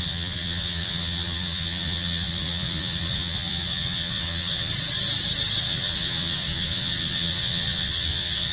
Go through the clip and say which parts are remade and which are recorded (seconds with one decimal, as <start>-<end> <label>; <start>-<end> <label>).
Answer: 0.0-4.7 remade; 4.7-5.6 recorded; 5.6-8.5 remade